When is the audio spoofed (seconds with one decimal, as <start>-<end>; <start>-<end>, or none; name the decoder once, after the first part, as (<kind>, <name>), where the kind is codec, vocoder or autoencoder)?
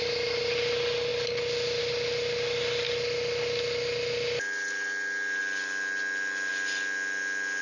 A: none